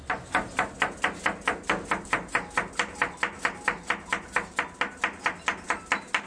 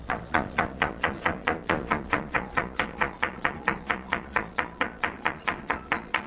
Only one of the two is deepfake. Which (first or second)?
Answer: second